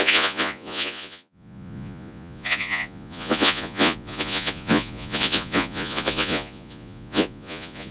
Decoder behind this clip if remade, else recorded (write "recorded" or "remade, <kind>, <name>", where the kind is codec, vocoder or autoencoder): remade, vocoder, Vocos